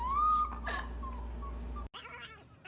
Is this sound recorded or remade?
recorded